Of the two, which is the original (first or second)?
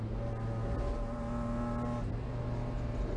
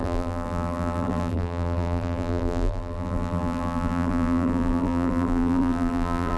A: first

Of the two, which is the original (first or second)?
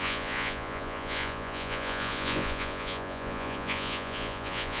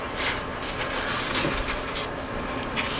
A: second